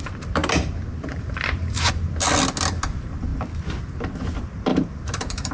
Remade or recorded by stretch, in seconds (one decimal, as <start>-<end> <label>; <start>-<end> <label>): 0.0-0.4 recorded; 0.4-1.9 remade; 1.9-4.7 recorded; 4.7-5.5 remade

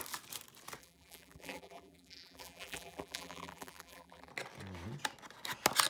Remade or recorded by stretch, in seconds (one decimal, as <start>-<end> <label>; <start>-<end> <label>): 0.0-0.8 recorded; 0.8-4.3 remade; 4.3-5.9 recorded

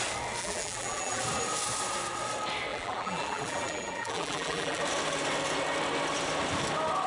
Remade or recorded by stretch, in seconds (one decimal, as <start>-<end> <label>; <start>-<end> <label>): 0.0-0.4 recorded; 0.4-1.2 remade; 1.2-2.7 recorded; 2.7-4.8 remade; 4.8-7.1 recorded

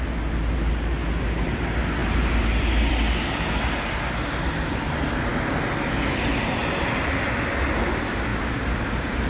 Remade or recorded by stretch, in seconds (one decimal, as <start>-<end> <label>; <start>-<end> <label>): 0.0-2.0 recorded; 2.0-2.9 remade; 2.9-8.3 recorded; 8.3-9.3 remade